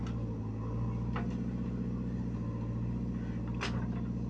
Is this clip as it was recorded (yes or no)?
yes